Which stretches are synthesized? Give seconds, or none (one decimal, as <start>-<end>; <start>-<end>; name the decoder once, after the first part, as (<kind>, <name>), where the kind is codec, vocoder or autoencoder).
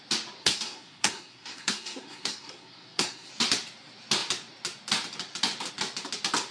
0.4-3.3 (codec, SNAC)